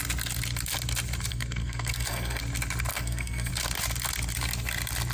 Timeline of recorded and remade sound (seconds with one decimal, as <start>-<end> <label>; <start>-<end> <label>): 0.0-1.3 recorded; 1.3-2.4 remade; 2.4-2.9 recorded; 2.9-3.5 remade; 3.5-5.1 recorded